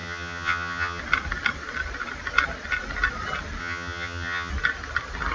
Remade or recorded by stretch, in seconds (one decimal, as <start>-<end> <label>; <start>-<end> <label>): 0.0-1.0 remade; 1.0-3.6 recorded; 3.6-4.5 remade; 4.5-5.3 recorded